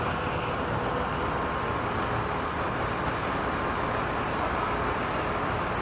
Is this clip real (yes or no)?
yes